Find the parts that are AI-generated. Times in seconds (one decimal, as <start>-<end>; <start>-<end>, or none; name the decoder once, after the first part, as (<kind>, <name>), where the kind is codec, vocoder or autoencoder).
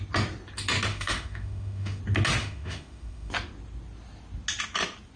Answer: 0.9-2.0 (autoencoder, DAC-VAE); 2.4-3.3